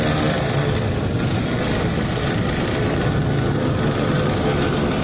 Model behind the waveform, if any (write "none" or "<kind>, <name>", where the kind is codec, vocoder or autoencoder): none